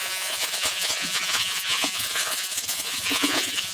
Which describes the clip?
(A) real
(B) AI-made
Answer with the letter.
B